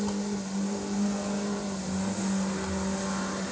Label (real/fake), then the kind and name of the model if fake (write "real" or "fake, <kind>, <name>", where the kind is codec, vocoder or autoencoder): real